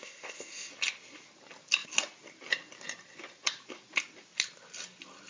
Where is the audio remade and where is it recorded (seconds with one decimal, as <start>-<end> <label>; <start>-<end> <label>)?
0.0-0.7 remade; 0.7-5.3 recorded